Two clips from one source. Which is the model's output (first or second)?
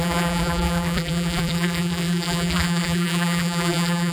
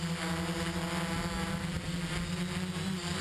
first